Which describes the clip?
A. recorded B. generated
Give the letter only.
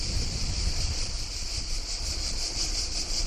A